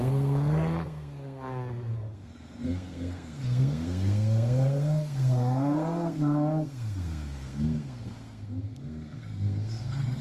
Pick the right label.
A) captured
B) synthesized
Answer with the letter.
B